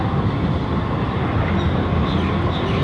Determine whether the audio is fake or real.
real